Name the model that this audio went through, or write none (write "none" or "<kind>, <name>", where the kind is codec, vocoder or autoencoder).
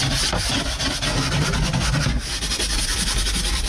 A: none